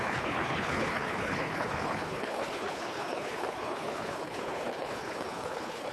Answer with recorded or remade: remade